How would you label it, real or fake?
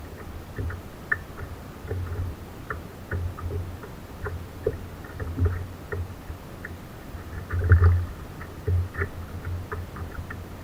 real